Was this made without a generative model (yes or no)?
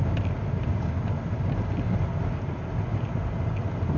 yes